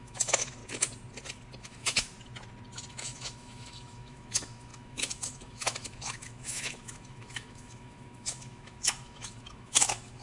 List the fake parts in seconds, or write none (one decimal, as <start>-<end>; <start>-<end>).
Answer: 0.0-0.6; 1.6-2.1; 2.9-10.2